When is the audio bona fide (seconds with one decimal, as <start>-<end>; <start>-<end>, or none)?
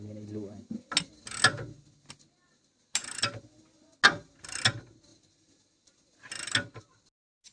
0.0-7.5